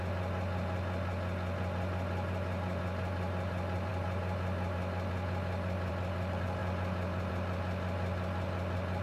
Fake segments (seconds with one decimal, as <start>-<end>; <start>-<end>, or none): none

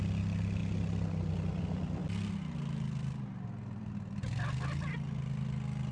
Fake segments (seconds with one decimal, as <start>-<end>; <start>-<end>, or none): none

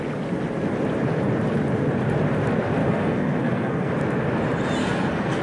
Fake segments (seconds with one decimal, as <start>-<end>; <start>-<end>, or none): 2.8-3.9; 4.8-5.4

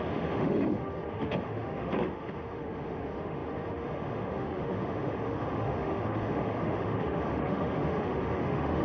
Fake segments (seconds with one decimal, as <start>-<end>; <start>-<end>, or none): 0.0-8.8

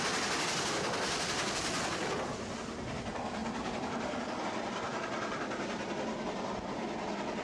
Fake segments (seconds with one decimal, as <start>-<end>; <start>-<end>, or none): none

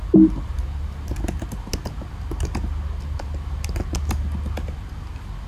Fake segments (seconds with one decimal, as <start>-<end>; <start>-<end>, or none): none

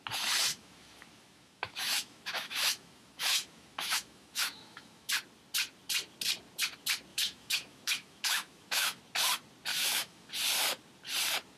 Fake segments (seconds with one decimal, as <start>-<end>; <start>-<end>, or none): 0.5-5.1; 7.1-9.0; 9.7-10.3

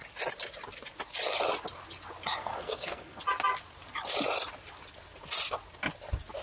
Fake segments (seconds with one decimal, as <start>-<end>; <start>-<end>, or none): 2.4-3.2